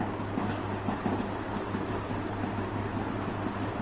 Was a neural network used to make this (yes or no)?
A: no